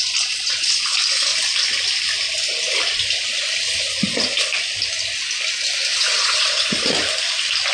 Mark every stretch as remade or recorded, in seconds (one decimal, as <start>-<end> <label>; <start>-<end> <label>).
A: 0.0-5.9 recorded; 5.9-6.8 remade; 6.8-7.7 recorded